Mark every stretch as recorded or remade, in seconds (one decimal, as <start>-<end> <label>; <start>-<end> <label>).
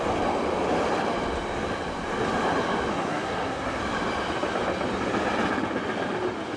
0.0-2.9 recorded; 2.9-3.8 remade; 3.8-6.6 recorded